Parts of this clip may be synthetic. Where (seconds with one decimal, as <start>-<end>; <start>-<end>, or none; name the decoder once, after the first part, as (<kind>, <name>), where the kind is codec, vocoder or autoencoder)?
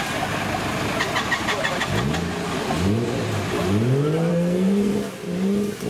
4.3-4.9 (codec, SNAC)